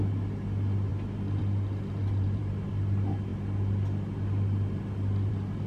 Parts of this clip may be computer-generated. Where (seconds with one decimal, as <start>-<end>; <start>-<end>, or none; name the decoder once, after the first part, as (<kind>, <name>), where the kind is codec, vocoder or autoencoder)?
2.0-2.7 (vocoder, BigVGAN v2)